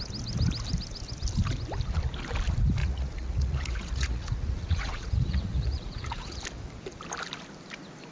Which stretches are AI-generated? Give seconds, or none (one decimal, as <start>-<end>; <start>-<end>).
2.8-6.4